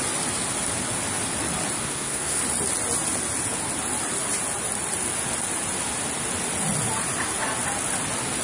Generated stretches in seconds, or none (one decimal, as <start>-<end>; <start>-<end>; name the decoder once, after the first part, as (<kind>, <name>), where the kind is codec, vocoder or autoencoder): 1.8-2.4 (codec, SNAC)